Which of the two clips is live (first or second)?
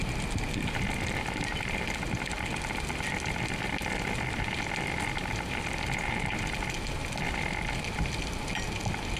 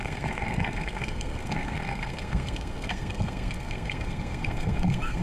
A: first